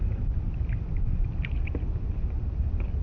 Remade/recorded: recorded